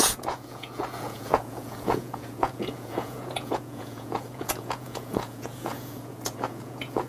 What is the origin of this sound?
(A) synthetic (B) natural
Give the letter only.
A